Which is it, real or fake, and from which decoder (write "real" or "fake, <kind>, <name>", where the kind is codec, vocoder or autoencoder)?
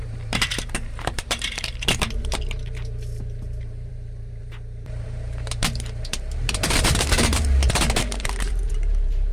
fake, vocoder, BigVGAN v2